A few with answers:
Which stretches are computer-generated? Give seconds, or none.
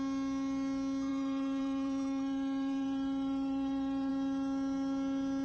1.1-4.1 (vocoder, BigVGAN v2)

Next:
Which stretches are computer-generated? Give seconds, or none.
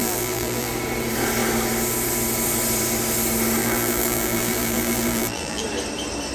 0.0-0.7 (vocoder, BigVGAN v2); 3.6-5.6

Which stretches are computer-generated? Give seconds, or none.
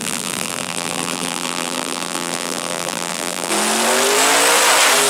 0.0-3.5 (vocoder, BigVGAN v2)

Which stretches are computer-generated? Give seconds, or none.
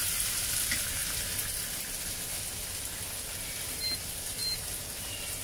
0.0-1.0 (vocoder, BigVGAN v2); 3.5-5.4